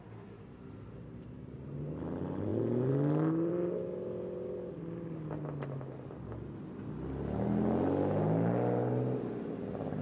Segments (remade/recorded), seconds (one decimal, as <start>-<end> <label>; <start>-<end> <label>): 0.0-10.0 recorded